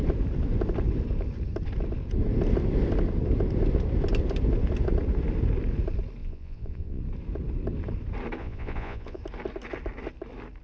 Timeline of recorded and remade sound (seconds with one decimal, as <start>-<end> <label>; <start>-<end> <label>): 0.0-6.2 recorded; 6.2-7.0 remade; 7.0-8.4 recorded; 8.4-9.2 remade; 9.2-10.6 recorded